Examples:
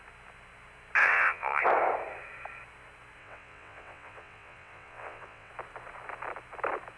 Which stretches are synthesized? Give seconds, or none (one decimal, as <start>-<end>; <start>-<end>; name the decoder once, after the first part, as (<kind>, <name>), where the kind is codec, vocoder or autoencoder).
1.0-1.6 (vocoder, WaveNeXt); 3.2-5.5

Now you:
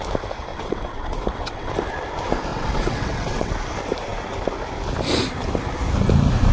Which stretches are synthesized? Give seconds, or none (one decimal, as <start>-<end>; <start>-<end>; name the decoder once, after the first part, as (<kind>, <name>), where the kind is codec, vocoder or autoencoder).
0.5-1.7 (vocoder, WaveNeXt); 2.5-3.5

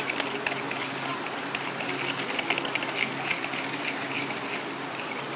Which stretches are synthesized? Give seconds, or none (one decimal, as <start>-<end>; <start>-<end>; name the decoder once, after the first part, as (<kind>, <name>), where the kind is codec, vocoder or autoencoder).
none

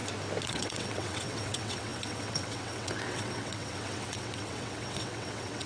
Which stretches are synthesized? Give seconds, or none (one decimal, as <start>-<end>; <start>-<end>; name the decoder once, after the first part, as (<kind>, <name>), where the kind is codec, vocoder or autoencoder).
0.5-5.7 (vocoder, WaveNeXt)